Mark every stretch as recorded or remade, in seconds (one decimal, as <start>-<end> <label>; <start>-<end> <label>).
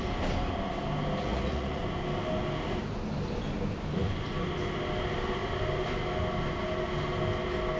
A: 0.0-1.2 recorded; 1.2-1.8 remade; 1.8-7.8 recorded